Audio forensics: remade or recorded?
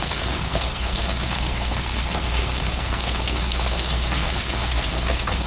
remade